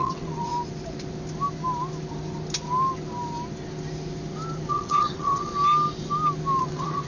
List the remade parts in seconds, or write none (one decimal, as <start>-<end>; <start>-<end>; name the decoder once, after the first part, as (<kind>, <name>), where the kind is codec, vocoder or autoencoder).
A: 0.0-0.5 (vocoder, WaveNeXt); 4.7-5.5; 6.6-7.1